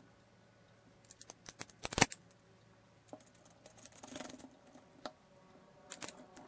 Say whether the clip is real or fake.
real